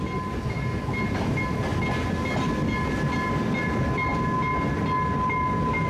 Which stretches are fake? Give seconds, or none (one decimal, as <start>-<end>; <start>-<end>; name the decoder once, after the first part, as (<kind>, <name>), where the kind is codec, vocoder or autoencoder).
none